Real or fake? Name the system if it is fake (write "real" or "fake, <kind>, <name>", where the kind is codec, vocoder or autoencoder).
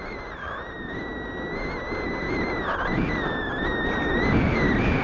real